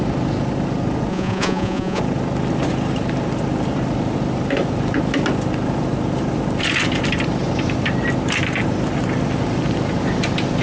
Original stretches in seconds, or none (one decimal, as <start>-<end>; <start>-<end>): 0.0-1.1; 2.0-10.6